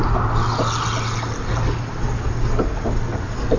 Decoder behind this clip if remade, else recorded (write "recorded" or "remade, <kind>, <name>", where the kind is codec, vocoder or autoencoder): recorded